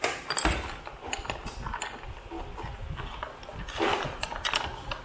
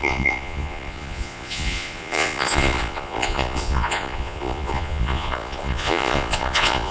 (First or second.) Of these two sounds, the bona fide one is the first